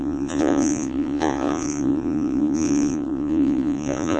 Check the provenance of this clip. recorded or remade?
remade